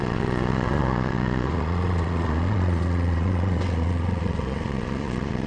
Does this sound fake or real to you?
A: fake